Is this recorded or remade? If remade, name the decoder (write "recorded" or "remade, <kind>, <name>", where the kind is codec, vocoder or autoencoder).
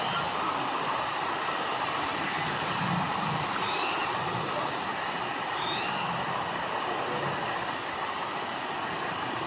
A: recorded